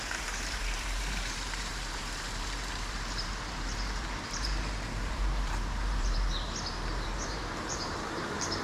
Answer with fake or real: fake